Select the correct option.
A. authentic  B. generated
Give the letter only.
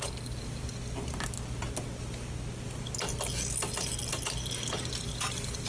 A